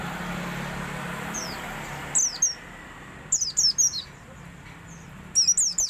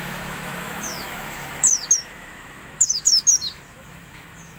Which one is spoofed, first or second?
second